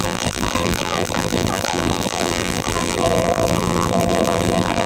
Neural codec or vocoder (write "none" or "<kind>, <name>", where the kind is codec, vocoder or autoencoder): vocoder, BigVGAN v2